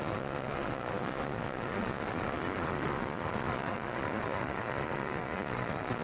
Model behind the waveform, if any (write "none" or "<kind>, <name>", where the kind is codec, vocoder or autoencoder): vocoder, Vocos